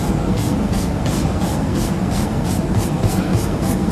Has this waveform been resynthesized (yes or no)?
yes